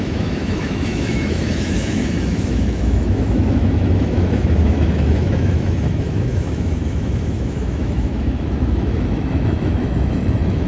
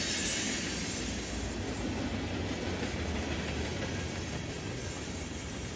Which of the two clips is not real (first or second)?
first